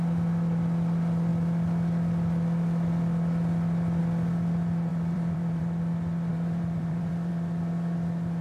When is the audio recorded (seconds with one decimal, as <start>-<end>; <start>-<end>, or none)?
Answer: 0.0-4.9; 5.6-6.3; 7.3-8.4

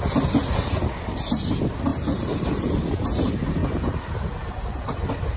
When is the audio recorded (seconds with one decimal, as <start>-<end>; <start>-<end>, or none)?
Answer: 0.0-5.4